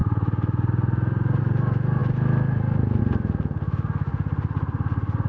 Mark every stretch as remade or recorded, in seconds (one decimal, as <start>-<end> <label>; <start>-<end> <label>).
0.0-1.4 remade; 1.4-5.3 recorded